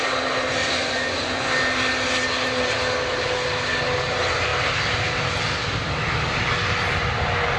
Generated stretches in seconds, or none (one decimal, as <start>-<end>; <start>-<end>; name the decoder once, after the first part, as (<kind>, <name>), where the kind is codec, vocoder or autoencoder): 0.6-1.5 (vocoder, Vocos)